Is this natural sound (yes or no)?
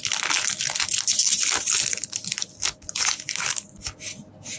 yes